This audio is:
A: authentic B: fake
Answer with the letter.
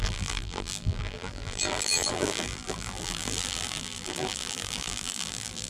B